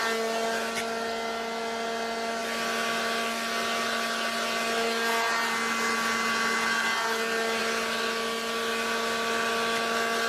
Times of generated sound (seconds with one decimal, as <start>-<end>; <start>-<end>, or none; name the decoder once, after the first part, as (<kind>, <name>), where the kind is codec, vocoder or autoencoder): none